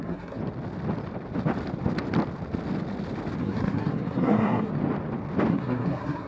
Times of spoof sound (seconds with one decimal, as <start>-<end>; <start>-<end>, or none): 0.0-0.4; 3.4-4.7; 5.5-6.3